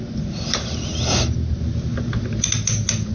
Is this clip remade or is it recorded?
recorded